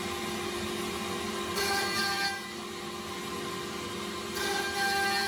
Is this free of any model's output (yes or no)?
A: yes